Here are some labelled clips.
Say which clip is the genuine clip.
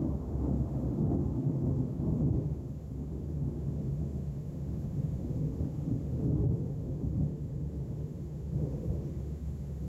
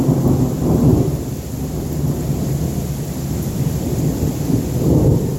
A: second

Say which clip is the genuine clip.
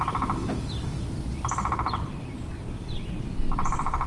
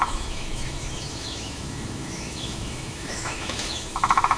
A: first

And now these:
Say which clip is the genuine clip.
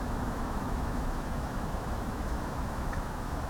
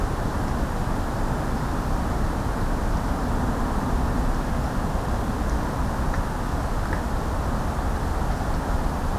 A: second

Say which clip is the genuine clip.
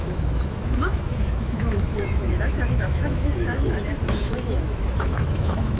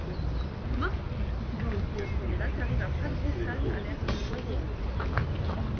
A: second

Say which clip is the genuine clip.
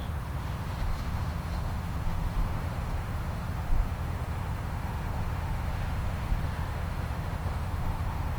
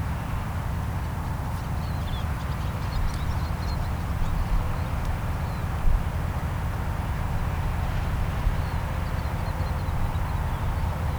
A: second